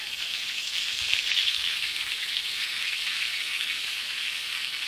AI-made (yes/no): yes